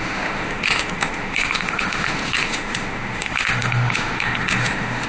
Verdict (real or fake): fake